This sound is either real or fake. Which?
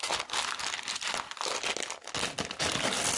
real